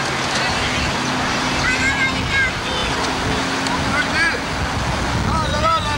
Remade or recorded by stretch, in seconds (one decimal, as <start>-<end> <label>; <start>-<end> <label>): 0.0-6.0 recorded